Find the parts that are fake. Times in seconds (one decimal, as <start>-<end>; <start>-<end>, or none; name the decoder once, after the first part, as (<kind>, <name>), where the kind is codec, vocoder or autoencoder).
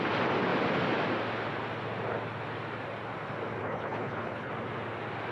3.6-4.5 (codec, HILCodec)